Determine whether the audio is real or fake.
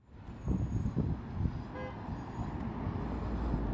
real